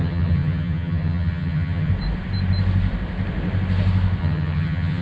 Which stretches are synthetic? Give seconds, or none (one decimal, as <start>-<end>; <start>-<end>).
0.0-1.9; 4.2-5.0